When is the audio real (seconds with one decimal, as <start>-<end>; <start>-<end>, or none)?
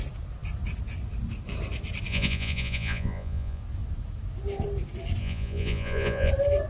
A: 0.0-2.1; 3.6-5.2; 6.3-6.7